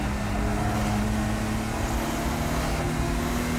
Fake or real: real